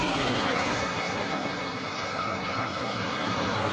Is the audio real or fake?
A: fake